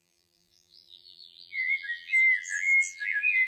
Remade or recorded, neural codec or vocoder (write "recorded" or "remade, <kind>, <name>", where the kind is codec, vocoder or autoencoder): remade, vocoder, BigVGAN v2